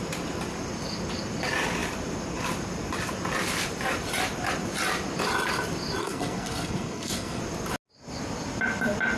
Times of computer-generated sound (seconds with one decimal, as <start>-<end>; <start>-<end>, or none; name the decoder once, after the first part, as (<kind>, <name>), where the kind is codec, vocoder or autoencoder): 6.0-7.4 (codec, SNAC)